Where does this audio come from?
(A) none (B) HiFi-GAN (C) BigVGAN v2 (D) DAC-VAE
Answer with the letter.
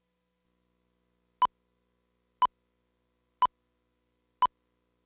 A